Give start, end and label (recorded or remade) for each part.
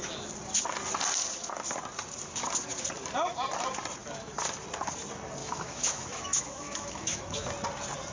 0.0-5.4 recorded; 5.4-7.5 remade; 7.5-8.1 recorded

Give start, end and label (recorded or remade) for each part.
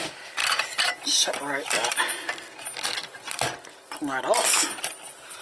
0.0-5.4 recorded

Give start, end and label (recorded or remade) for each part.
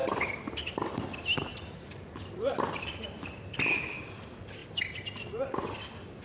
0.0-1.5 recorded; 1.5-3.0 remade; 3.0-6.2 recorded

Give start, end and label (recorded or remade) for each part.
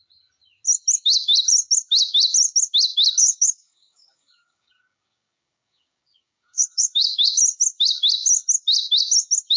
0.0-3.2 recorded; 3.2-7.3 remade; 7.3-9.6 recorded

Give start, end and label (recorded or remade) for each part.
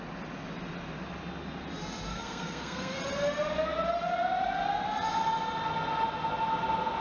0.0-2.1 recorded; 2.1-3.0 remade; 3.0-7.0 recorded